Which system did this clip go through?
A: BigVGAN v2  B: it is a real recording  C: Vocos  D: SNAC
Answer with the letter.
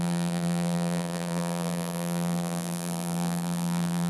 A